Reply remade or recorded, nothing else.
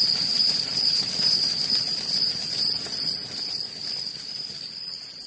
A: remade